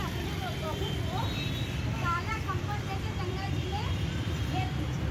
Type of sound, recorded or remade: remade